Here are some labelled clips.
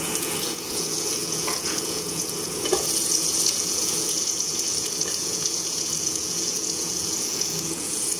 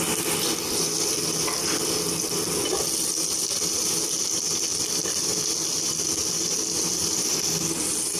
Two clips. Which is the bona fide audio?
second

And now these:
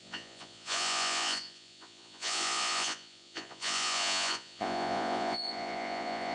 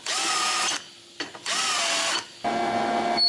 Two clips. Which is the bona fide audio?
second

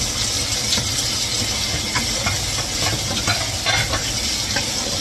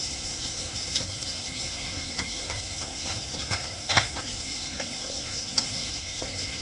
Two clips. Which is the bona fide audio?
first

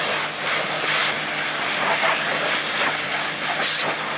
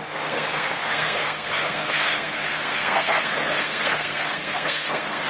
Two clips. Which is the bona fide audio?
first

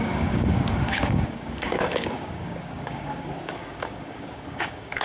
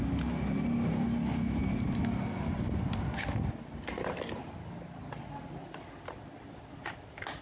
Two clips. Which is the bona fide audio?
second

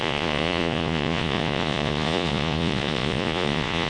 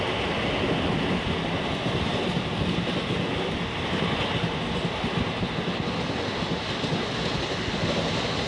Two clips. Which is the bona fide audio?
second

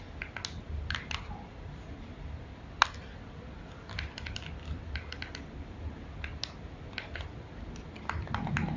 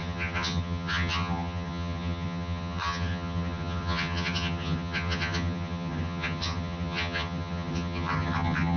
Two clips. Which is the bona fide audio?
first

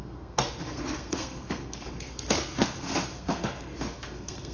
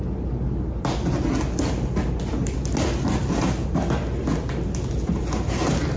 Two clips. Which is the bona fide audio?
second